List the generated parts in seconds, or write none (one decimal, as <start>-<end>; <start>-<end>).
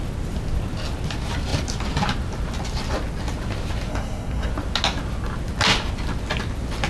3.9-4.5